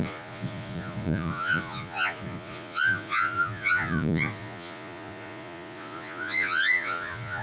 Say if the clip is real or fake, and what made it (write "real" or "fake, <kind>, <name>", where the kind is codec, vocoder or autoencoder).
fake, vocoder, Vocos